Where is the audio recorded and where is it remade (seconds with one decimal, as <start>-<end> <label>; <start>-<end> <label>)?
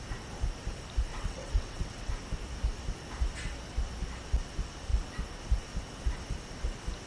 0.0-1.1 recorded; 1.1-2.1 remade; 2.1-7.1 recorded